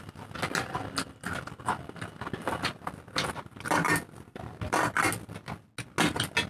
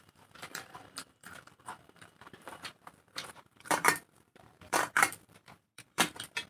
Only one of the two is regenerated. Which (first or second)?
second